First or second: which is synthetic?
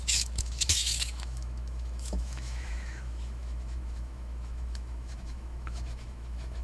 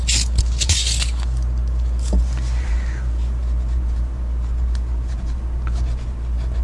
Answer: first